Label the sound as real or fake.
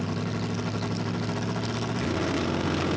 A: real